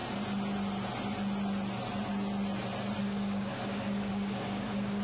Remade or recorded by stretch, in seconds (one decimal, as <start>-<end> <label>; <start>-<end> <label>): 0.0-3.0 recorded; 3.0-5.0 remade